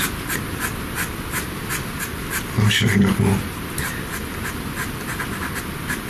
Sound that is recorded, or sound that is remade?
recorded